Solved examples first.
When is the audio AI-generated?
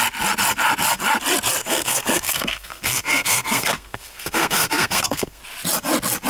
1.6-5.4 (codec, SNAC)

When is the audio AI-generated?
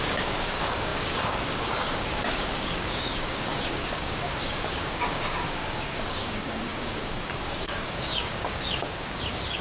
0.0-9.6 (codec, DAC)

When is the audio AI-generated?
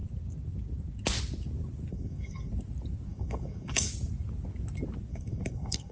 1.9-2.5 (codec, DAC); 3.1-3.9; 5.1-5.9